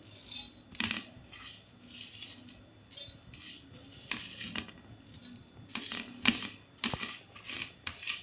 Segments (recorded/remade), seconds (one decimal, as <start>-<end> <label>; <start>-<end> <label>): 0.0-8.2 recorded